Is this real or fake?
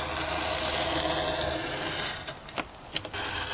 real